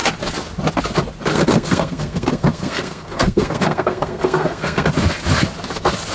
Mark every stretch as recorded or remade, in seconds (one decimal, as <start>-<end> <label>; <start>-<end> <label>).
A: 0.0-1.3 recorded; 1.3-4.9 remade; 4.9-6.1 recorded